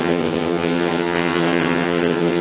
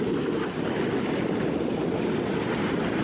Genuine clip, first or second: second